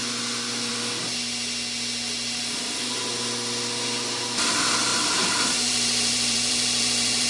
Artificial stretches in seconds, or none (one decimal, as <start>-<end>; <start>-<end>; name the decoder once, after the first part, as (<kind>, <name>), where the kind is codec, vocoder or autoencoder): 4.9-7.3 (vocoder, BigVGAN v2)